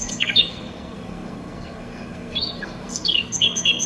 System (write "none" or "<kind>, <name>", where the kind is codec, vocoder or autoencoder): codec, SNAC